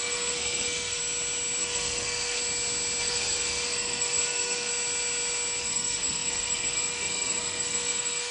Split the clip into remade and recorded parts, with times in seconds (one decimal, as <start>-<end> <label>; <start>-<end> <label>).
0.0-1.0 remade; 1.0-1.6 recorded; 1.6-2.4 remade; 2.4-3.0 recorded; 3.0-4.7 remade; 4.7-5.6 recorded; 5.6-8.3 remade